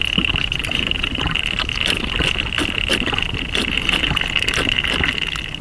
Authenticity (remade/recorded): recorded